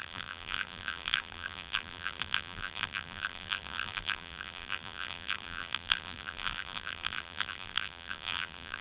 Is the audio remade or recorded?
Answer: remade